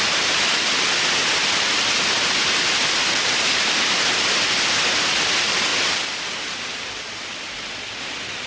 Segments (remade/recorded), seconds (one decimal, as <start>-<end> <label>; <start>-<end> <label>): 0.0-8.5 recorded